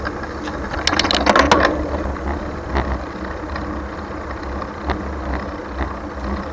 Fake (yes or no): no